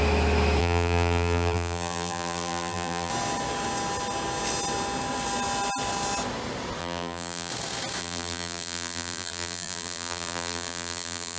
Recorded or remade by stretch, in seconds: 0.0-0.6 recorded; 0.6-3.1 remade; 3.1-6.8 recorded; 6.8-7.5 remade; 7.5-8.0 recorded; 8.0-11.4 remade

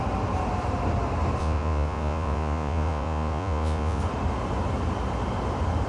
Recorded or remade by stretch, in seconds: 0.0-1.4 recorded; 1.4-4.0 remade; 4.0-5.9 recorded